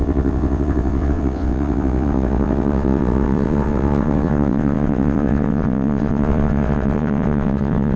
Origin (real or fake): fake